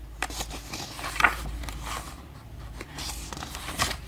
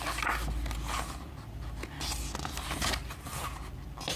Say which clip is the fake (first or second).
first